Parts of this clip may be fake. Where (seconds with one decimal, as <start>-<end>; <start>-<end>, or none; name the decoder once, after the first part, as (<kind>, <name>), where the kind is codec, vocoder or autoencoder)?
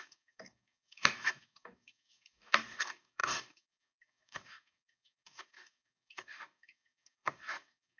0.0-8.0 (codec, DAC)